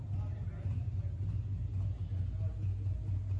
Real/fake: real